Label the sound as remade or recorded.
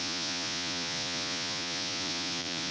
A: remade